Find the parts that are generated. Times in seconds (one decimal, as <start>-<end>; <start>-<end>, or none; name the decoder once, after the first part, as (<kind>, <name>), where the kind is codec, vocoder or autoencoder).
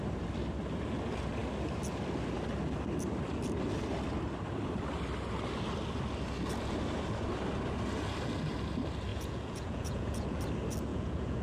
9.1-10.4 (vocoder, Vocos); 10.9-11.4